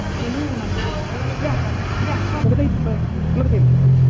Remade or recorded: recorded